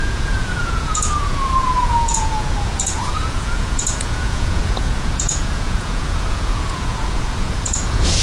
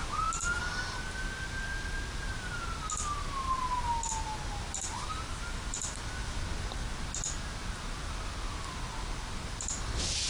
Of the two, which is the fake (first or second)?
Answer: first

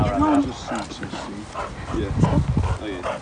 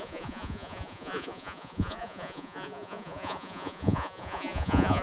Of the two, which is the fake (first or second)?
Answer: second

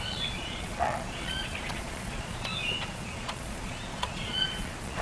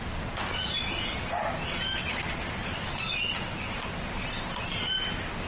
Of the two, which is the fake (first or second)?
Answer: first